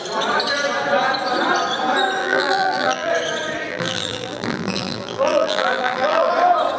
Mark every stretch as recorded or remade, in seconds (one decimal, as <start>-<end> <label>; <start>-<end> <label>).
0.0-2.2 recorded; 2.2-3.1 remade; 3.1-3.7 recorded; 3.7-6.3 remade; 6.3-6.8 recorded